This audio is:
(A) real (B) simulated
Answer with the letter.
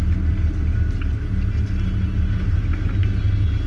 A